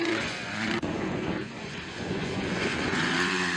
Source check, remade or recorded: remade